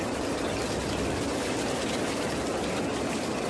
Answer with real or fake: real